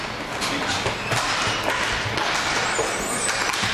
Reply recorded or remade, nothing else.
recorded